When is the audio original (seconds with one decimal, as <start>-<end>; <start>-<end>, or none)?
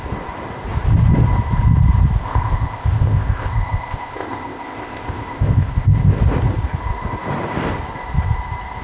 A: 0.0-2.2; 6.2-8.8